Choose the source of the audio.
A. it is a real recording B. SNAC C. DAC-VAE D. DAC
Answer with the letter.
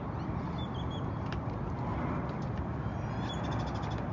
A